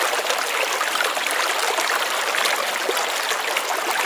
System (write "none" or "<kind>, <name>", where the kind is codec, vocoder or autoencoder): none